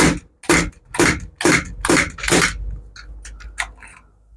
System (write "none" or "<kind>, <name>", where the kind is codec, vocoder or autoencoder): none